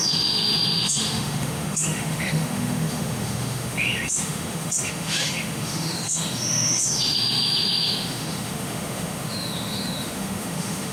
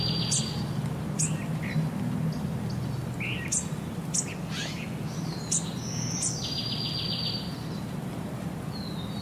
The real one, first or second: second